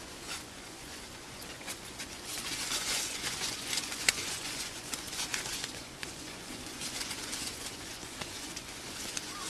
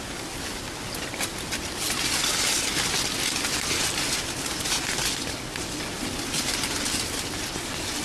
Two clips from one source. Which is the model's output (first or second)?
first